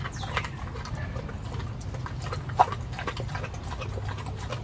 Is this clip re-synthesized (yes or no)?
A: no